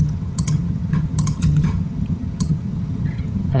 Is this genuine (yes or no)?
no